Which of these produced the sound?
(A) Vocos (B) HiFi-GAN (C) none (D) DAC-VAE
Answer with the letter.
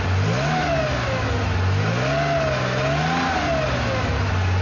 C